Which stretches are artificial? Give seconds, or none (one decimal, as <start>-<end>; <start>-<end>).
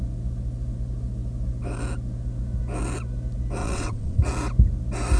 3.6-4.2